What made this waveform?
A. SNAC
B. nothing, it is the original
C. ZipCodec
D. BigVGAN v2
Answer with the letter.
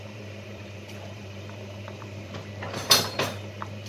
D